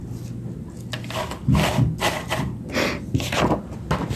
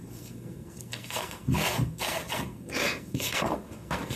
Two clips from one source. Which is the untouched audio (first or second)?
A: first